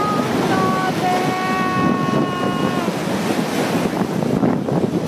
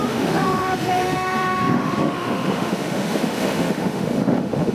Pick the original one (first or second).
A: first